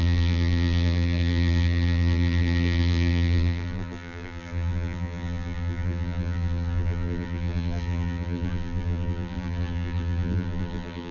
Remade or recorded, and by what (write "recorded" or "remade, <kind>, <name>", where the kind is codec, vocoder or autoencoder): remade, vocoder, BigVGAN v2